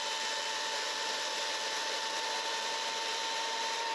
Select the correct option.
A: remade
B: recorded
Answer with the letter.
A